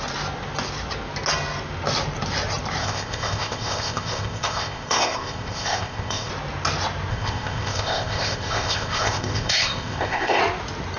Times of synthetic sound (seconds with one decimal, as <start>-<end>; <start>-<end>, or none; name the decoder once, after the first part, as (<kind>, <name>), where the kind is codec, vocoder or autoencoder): 2.8-6.3 (codec, ZipCodec); 7.1-10.4